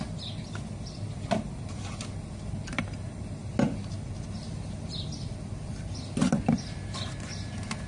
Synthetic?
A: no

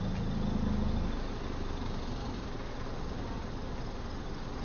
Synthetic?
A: no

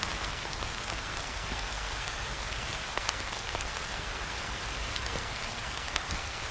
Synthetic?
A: yes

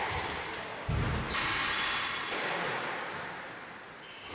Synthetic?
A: no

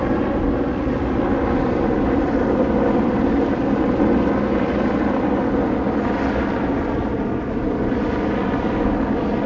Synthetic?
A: no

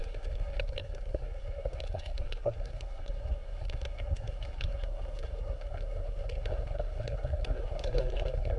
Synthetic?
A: yes